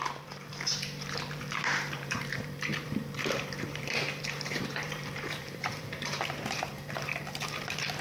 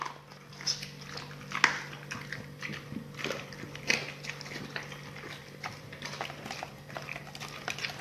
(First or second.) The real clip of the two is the second